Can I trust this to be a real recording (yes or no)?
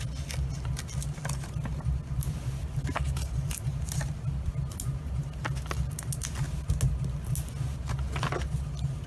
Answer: yes